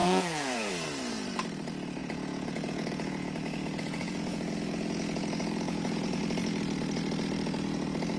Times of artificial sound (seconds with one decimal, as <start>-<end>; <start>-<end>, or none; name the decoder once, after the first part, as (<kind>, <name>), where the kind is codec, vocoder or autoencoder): 0.0-0.7 (vocoder, Vocos); 2.0-6.2